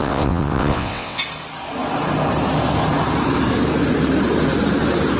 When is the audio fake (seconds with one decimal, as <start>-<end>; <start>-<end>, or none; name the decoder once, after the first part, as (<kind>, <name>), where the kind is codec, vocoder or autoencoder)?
0.0-1.2 (vocoder, WaveNeXt)